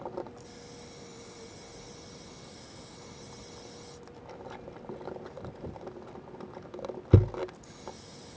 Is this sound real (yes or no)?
yes